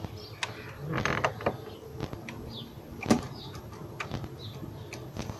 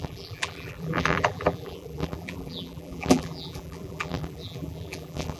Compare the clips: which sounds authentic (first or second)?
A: first